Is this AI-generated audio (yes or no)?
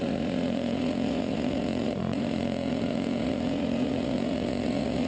yes